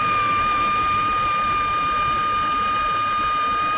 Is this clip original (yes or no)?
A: yes